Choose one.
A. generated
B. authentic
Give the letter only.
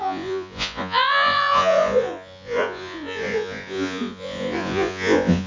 A